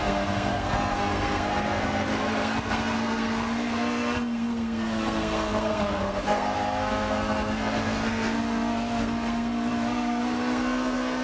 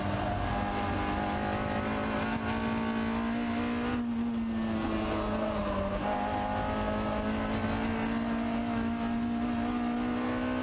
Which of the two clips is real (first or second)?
second